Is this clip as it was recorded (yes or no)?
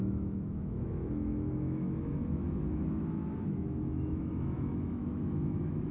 no